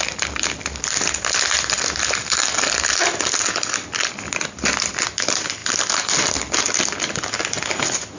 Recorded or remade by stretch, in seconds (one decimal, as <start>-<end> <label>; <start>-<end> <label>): 0.0-8.2 recorded